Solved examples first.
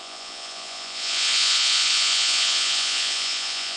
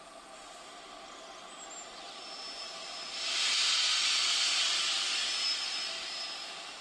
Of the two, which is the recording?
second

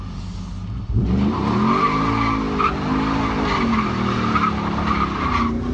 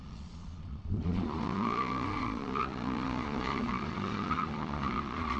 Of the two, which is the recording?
first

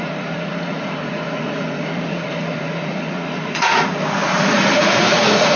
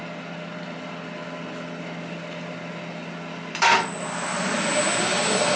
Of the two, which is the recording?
second